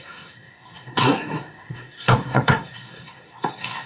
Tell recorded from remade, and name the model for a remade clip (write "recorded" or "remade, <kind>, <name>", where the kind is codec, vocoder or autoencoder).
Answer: remade, codec, SNAC